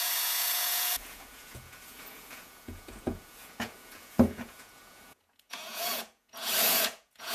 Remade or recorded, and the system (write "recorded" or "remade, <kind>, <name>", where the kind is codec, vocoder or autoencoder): remade, vocoder, Vocos